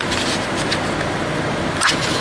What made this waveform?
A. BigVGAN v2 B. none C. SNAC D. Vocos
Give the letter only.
B